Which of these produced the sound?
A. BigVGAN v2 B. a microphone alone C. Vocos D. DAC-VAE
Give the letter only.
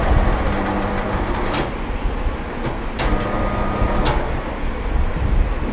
B